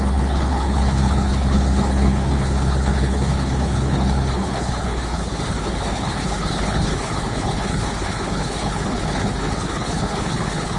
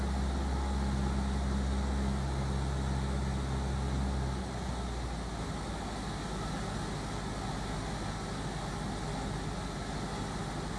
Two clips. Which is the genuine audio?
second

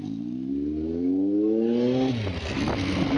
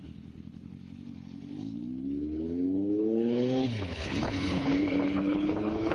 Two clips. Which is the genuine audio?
first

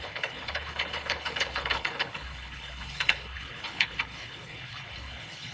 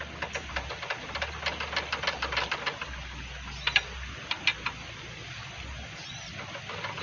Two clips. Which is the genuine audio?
second